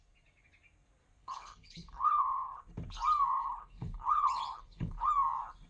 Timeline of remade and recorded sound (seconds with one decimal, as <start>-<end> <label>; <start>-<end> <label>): 0.0-1.2 recorded; 1.2-2.6 remade; 2.6-3.3 recorded; 3.3-5.1 remade; 5.1-5.7 recorded